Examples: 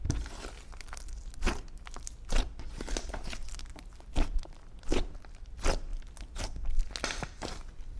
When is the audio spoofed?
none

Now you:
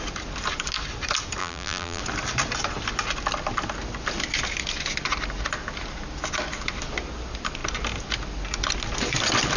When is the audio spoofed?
1.4-2.0 (vocoder, BigVGAN v2)

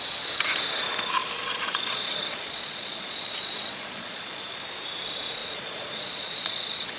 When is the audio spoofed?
1.2-4.6 (vocoder, Vocos); 5.4-7.0

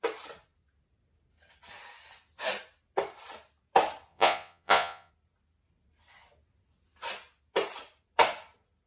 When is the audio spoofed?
4.1-5.1 (vocoder, Vocos)